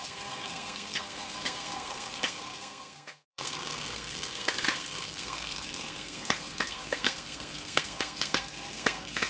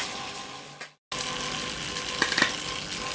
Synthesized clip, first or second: first